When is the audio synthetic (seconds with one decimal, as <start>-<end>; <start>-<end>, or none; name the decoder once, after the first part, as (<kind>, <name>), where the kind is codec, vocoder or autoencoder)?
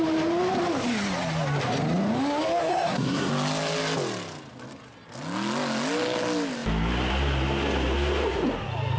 2.6-3.3 (codec, SNAC)